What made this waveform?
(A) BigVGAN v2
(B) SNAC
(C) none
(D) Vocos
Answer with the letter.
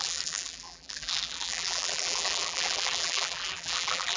A